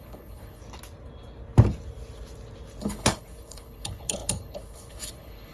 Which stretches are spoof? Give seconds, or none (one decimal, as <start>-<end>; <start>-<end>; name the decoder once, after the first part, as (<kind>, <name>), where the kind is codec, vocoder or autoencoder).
0.0-0.6 (codec, HILCodec); 2.8-5.5